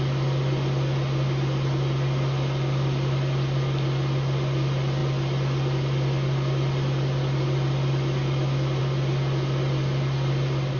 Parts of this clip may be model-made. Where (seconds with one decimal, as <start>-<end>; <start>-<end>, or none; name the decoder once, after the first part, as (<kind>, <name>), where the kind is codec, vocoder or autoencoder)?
none

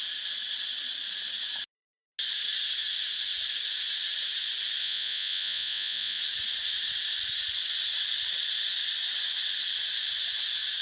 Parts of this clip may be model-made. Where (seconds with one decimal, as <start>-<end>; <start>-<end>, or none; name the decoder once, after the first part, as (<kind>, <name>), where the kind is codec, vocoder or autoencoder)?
4.8-6.2 (vocoder, Vocos)